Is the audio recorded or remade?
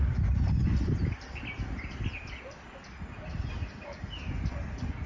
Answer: recorded